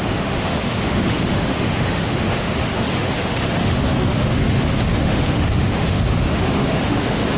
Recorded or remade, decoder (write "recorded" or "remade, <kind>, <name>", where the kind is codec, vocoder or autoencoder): remade, autoencoder, DAC-VAE